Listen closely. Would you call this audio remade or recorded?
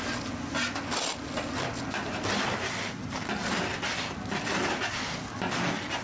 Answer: recorded